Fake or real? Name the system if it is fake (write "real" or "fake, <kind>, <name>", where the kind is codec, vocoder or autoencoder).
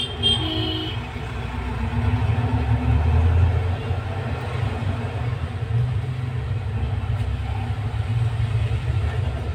real